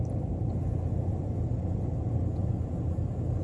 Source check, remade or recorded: recorded